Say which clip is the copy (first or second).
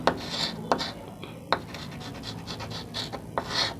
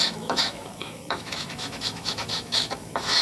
second